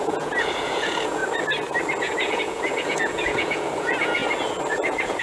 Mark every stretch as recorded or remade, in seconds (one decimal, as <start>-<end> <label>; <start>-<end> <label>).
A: 0.0-1.2 remade; 1.2-2.0 recorded; 2.0-4.2 remade; 4.2-4.7 recorded; 4.7-5.2 remade